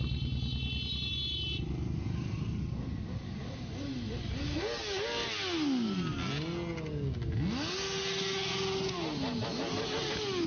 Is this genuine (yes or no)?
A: yes